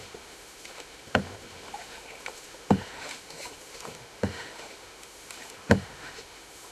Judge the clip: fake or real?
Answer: fake